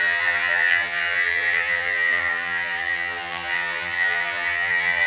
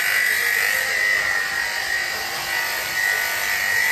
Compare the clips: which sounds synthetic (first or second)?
first